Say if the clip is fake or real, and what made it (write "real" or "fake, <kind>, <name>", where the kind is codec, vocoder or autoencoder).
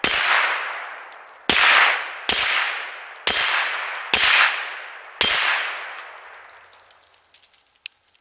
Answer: real